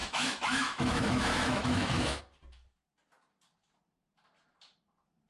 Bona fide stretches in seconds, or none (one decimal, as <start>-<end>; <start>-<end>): 2.2-5.3